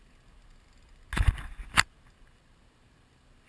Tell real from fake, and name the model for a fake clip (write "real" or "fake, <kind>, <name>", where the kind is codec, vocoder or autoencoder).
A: real